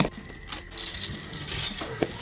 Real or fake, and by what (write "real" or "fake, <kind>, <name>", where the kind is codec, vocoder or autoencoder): real